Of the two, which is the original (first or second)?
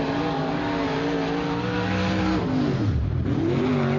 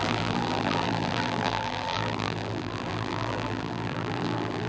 first